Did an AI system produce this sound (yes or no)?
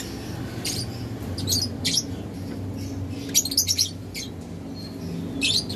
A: no